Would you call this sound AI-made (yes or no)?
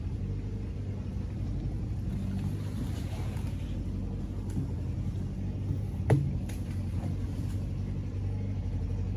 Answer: no